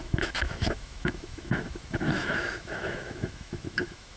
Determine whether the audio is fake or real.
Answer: fake